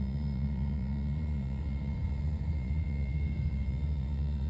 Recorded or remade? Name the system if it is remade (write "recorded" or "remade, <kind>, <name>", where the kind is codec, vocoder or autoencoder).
remade, vocoder, Vocos